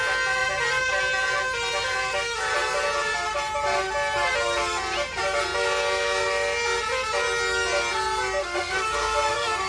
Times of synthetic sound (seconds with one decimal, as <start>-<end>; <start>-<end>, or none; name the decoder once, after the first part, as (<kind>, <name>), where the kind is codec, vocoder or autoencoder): 8.4-9.7 (codec, SNAC)